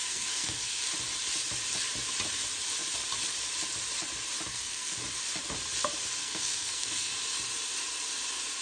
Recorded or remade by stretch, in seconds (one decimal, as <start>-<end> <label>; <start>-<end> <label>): 0.0-0.8 remade; 0.8-4.5 recorded; 4.5-5.0 remade; 5.0-6.2 recorded; 6.2-7.1 remade; 7.1-8.6 recorded